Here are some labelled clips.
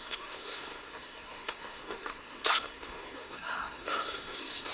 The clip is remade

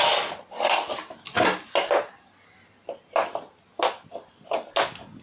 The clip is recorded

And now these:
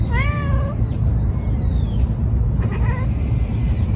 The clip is recorded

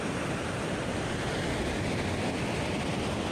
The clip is recorded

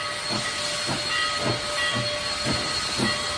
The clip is recorded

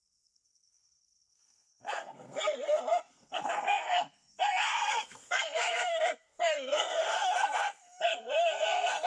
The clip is remade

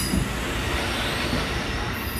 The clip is recorded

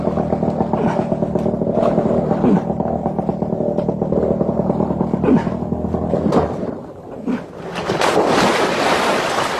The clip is recorded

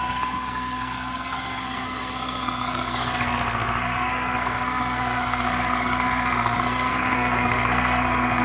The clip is remade